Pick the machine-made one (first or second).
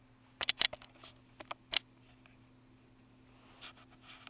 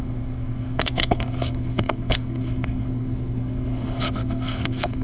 second